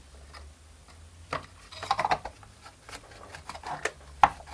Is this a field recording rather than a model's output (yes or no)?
yes